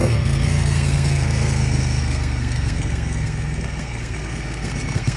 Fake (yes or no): yes